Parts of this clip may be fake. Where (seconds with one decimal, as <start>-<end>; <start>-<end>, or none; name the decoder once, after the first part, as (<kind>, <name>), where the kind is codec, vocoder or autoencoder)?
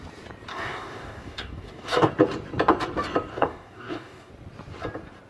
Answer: 0.5-2.1 (codec, DAC); 3.3-4.3